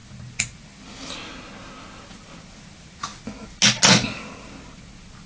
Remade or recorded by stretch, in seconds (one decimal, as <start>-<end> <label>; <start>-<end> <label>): 0.0-5.3 recorded